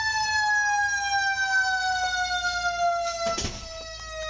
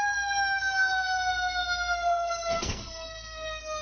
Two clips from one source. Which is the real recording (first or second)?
first